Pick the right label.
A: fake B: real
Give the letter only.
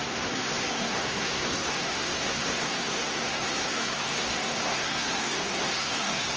A